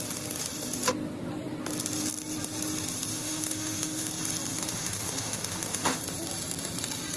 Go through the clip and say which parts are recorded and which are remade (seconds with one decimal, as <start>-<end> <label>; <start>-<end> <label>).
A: 0.0-3.1 recorded; 3.1-4.1 remade; 4.1-4.5 recorded; 4.5-6.0 remade; 6.0-7.2 recorded